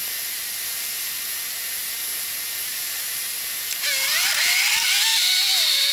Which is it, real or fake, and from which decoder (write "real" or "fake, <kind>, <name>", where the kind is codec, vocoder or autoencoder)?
real